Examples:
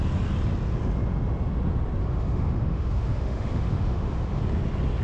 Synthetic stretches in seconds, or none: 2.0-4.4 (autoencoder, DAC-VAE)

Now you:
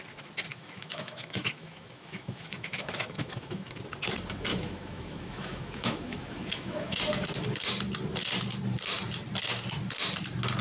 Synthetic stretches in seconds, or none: 0.5-3.8 (autoencoder, DAC-VAE); 4.5-7.0

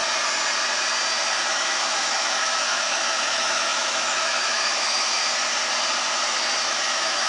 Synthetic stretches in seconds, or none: 1.5-5.2 (autoencoder, DAC-VAE); 6.6-7.3